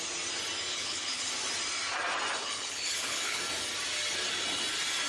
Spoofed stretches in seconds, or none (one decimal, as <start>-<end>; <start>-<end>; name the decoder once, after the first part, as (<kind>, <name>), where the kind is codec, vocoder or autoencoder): 0.7-1.3 (codec, HILCodec); 2.4-3.4